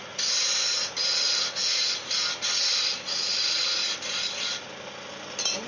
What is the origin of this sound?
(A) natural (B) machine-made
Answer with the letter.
A